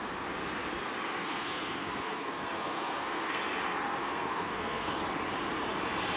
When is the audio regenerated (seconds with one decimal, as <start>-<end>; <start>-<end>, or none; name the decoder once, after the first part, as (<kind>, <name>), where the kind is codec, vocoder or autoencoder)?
1.2-3.4 (codec, SNAC); 4.0-4.9